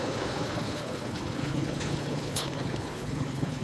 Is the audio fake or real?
fake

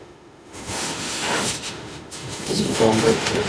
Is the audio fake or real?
fake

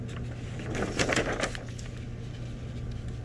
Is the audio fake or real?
real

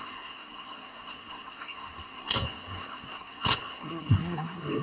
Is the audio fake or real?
fake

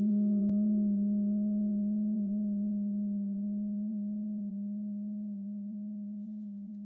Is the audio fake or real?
fake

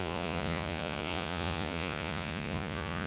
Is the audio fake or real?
fake